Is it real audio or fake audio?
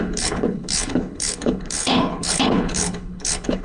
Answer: fake